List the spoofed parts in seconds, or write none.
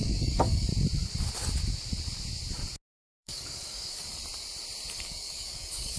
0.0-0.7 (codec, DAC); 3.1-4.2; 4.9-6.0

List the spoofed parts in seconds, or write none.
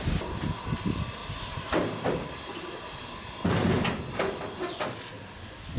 0.0-3.4 (vocoder, BigVGAN v2)